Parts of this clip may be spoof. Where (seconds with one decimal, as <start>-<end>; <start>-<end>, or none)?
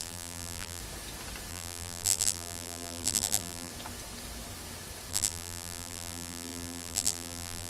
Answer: 0.0-0.8; 1.5-3.7; 5.1-7.7